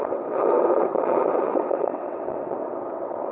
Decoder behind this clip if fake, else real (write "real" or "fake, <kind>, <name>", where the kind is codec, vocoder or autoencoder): fake, vocoder, WaveNeXt